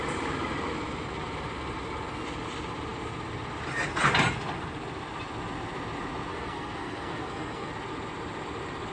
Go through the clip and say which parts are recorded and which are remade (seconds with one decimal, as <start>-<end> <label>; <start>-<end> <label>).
0.0-6.3 recorded; 6.3-7.7 remade; 7.7-8.9 recorded